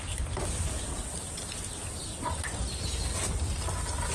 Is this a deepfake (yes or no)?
no